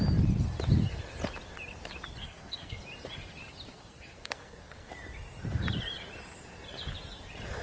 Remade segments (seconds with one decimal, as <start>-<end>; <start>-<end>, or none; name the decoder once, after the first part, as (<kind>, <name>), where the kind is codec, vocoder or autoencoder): 2.2-2.8 (codec, SNAC); 3.7-4.9